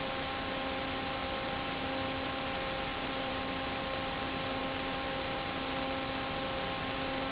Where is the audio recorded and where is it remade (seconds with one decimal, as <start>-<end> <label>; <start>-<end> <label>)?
0.0-2.9 recorded; 2.9-3.4 remade; 3.4-7.3 recorded